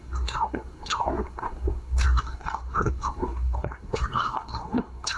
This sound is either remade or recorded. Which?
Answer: remade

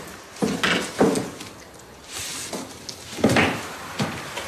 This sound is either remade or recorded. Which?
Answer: recorded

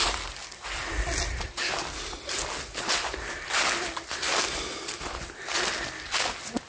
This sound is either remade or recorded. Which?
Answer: recorded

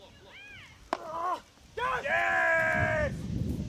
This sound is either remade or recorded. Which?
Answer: recorded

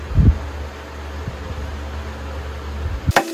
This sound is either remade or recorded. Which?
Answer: recorded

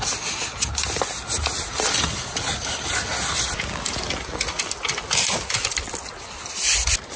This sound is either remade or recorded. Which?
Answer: recorded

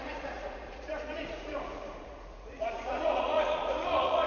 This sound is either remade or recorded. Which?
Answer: remade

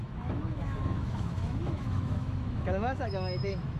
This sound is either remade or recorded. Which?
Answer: remade